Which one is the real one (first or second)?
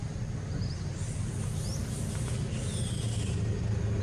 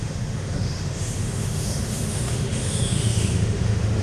first